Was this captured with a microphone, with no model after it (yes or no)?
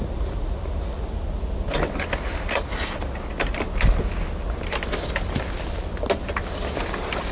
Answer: yes